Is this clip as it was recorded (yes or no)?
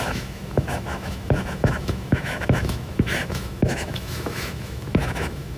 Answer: no